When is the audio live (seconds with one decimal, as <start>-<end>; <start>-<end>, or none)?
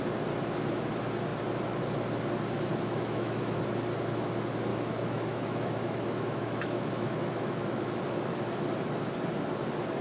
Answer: 0.0-2.7; 3.6-4.7; 8.5-10.0